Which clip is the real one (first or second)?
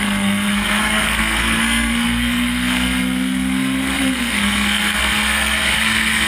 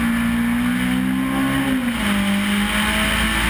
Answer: second